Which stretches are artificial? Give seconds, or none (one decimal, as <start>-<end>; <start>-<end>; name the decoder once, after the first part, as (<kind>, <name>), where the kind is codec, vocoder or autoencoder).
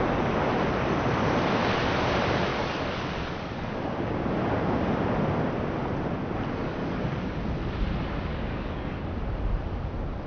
2.5-3.7 (codec, DAC); 6.6-7.4; 8.3-9.0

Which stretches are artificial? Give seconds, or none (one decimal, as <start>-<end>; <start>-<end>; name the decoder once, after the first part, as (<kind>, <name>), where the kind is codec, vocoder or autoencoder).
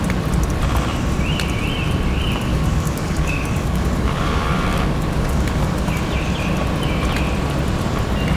2.5-5.9 (codec, DAC)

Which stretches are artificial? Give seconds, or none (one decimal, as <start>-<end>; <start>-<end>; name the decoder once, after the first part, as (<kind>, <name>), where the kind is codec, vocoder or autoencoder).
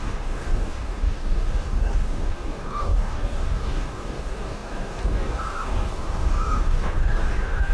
0.0-7.7 (codec, DAC)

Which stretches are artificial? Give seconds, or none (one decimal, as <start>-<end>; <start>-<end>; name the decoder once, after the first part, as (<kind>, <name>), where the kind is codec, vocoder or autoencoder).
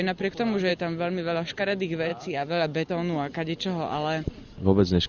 2.1-2.9 (codec, DAC)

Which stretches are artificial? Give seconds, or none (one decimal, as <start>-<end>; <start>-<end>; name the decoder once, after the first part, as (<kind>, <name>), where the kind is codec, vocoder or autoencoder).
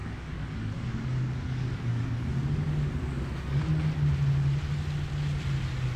0.0-3.6 (codec, DAC)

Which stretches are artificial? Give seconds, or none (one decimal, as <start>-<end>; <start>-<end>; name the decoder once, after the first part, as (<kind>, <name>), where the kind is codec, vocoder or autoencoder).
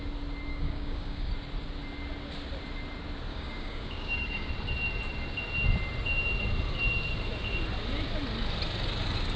0.5-1.3 (codec, DAC); 3.3-4.5